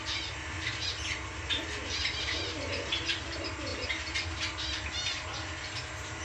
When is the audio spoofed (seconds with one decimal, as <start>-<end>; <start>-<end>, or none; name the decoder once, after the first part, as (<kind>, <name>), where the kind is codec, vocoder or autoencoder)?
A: none